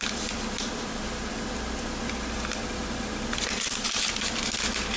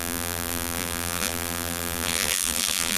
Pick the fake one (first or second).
second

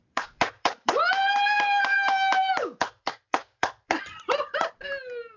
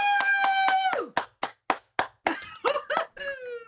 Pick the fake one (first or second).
first